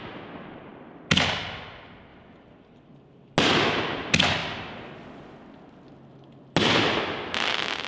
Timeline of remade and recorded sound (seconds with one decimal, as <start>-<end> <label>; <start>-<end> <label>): 0.0-7.9 recorded

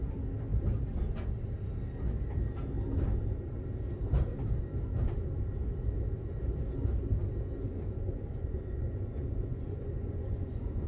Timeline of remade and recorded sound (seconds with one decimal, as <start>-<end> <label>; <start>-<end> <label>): 0.0-7.7 recorded; 7.7-10.9 remade

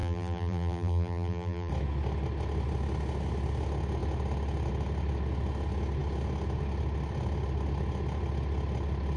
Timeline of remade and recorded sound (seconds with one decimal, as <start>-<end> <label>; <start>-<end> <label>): 0.0-1.7 remade; 1.7-9.2 recorded

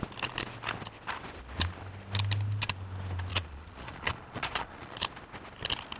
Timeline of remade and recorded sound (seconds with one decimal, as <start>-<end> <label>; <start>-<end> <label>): 0.0-3.3 recorded; 3.3-5.0 remade; 5.0-6.0 recorded

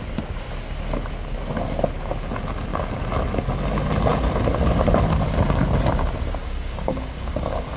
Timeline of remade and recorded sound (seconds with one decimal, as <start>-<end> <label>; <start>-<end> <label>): 0.0-6.4 recorded; 6.4-7.8 remade